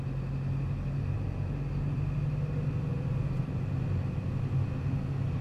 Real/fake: real